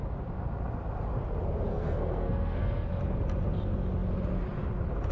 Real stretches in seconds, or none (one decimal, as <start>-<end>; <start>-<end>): 0.0-1.7; 2.9-5.1